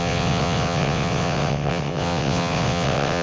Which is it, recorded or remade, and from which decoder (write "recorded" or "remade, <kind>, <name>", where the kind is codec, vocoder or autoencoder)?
remade, vocoder, WaveNeXt